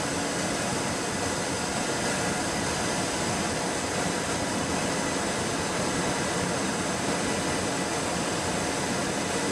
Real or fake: real